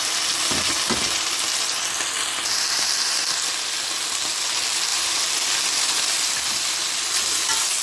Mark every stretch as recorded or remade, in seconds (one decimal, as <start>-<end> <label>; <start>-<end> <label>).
0.0-7.8 recorded